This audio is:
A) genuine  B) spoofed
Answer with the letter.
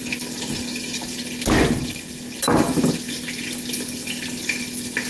A